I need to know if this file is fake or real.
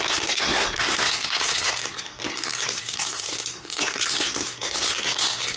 fake